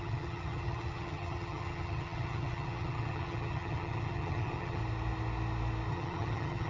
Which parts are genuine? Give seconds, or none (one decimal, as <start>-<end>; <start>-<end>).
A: 4.8-5.9